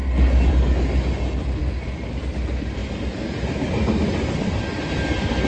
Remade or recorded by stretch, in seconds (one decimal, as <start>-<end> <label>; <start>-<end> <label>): 0.0-5.5 recorded